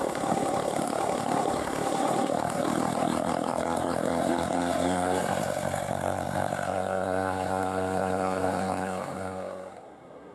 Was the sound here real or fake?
fake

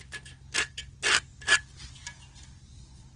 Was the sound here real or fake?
real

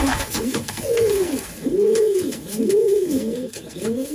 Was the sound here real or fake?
fake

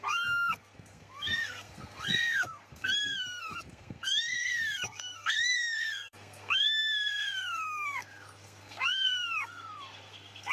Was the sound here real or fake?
fake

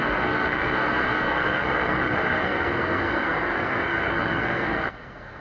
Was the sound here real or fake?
fake